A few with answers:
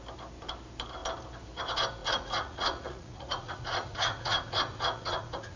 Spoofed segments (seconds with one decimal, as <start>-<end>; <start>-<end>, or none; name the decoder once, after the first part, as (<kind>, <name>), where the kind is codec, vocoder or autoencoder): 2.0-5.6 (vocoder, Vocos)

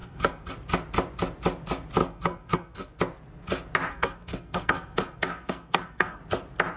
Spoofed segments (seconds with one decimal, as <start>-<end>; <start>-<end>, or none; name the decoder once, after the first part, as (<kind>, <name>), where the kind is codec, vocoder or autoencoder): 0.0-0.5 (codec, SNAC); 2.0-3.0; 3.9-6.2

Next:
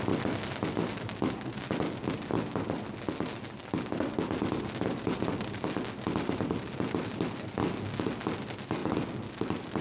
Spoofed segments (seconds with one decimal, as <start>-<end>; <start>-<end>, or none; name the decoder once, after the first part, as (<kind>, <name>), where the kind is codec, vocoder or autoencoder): none

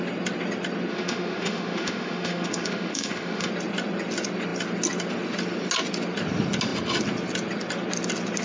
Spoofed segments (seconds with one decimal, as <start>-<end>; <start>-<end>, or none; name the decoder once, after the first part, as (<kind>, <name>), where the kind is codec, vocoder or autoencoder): 0.9-3.5 (autoencoder, DAC-VAE)

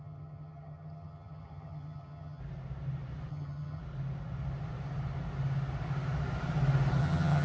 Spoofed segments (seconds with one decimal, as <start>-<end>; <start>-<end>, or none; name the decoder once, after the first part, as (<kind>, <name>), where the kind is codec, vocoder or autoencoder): 0.0-2.4 (vocoder, HiFi-GAN); 3.3-3.8; 7.0-7.4

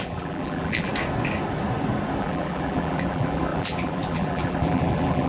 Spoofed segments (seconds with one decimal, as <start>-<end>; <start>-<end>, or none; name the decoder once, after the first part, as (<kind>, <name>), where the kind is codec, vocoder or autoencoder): 0.0-0.9 (vocoder, BigVGAN v2); 2.2-5.3

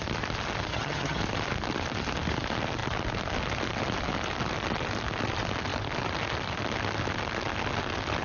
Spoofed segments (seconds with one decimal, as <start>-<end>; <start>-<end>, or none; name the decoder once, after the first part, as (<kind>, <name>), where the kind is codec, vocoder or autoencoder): 0.7-1.2 (vocoder, HiFi-GAN)